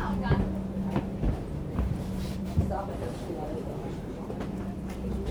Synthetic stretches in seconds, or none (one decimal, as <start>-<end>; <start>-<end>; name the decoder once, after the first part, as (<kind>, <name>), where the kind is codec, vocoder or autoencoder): 1.1-4.3 (vocoder, BigVGAN v2)